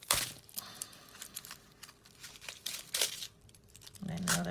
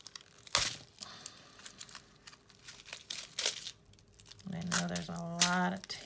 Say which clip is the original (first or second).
second